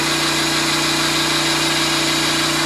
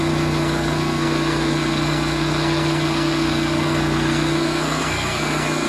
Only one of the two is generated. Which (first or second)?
second